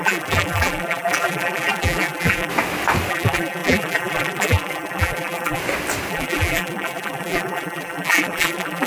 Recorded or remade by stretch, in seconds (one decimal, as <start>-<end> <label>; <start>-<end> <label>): 0.0-2.5 remade; 2.5-3.1 recorded; 3.1-5.6 remade; 5.6-6.1 recorded; 6.1-8.9 remade